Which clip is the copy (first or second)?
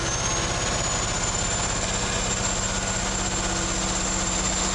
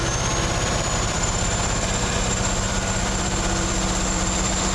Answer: second